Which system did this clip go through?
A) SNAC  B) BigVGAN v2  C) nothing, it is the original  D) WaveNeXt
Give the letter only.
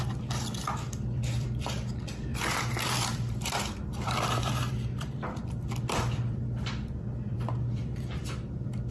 B